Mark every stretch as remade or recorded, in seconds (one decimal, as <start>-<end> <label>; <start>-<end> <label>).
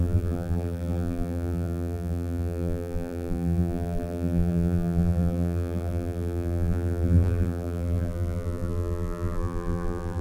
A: 0.0-10.2 remade